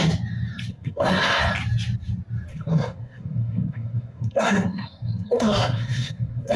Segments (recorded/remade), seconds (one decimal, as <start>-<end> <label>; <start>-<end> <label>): 0.0-0.7 recorded; 0.7-1.4 remade; 1.4-2.5 recorded; 2.5-6.6 remade